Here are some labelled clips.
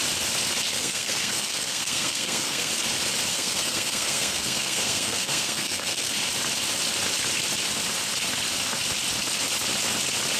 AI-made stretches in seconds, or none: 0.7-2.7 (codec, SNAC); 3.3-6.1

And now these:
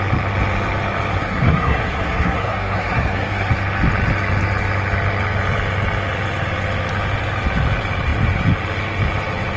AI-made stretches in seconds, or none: 1.1-3.5 (codec, SNAC)

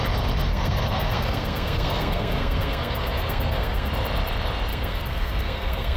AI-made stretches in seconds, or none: 0.5-3.9 (codec, SNAC); 4.7-6.0

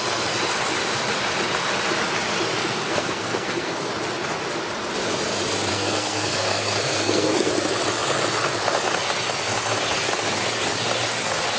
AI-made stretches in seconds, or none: 2.6-3.9 (codec, SNAC); 5.7-7.5

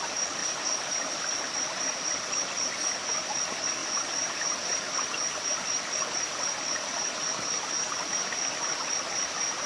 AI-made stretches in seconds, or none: none

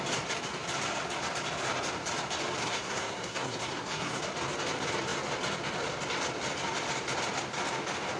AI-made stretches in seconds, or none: 2.6-4.2 (codec, SNAC)

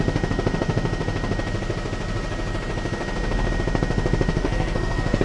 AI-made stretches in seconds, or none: 4.3-5.2 (codec, SNAC)

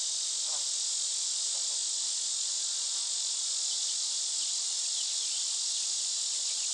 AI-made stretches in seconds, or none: none